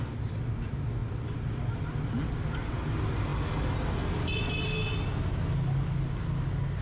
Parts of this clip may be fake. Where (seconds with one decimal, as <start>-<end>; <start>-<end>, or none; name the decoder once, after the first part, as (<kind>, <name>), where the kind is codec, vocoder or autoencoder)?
none